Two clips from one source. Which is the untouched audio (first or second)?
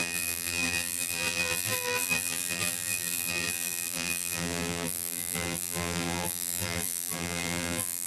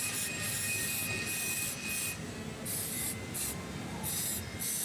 second